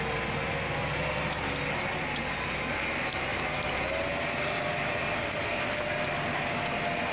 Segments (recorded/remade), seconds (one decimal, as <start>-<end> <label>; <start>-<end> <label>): 0.0-7.1 recorded